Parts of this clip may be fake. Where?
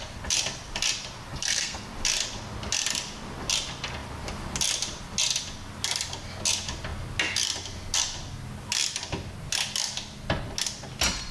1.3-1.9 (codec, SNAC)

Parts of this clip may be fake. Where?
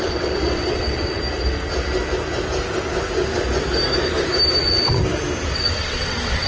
0.0-1.2 (vocoder, WaveNeXt); 4.6-5.0; 5.5-6.5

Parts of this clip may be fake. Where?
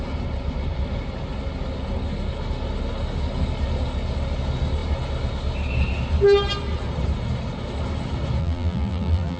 8.4-9.4 (vocoder, BigVGAN v2)